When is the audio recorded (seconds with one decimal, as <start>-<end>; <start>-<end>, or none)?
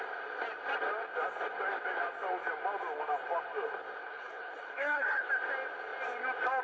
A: 0.0-4.0; 5.3-6.6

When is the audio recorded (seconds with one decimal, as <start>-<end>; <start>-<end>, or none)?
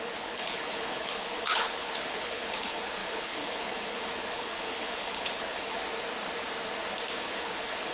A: 5.8-7.1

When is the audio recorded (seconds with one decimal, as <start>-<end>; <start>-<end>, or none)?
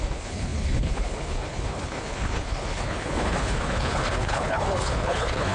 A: none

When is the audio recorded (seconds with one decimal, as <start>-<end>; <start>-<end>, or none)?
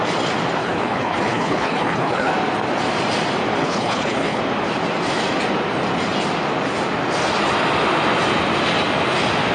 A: 0.0-0.6; 2.3-3.6; 4.4-9.5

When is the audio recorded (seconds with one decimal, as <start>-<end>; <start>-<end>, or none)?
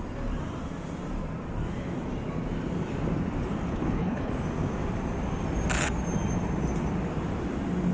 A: 0.0-3.7; 4.3-7.9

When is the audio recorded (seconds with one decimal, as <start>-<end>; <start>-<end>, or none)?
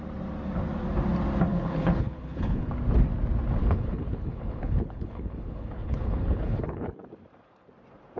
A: 0.0-1.5; 2.7-3.6; 7.0-8.2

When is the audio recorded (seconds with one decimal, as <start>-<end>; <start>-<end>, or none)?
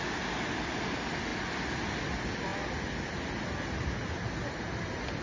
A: 0.0-5.2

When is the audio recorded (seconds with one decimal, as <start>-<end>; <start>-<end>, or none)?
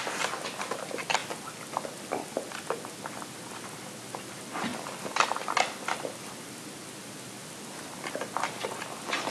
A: 0.0-9.3